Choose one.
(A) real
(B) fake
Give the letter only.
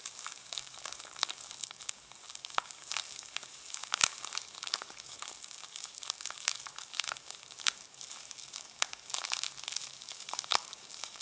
B